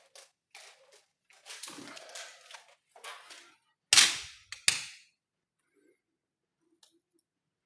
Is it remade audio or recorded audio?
recorded